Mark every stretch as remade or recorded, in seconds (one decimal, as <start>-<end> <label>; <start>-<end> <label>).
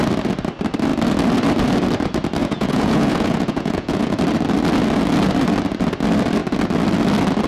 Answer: 0.0-2.4 recorded; 2.4-4.2 remade; 4.2-7.5 recorded